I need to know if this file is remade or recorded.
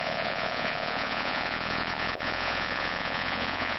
remade